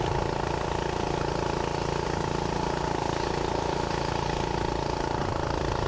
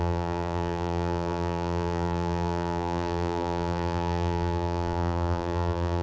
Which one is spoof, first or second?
second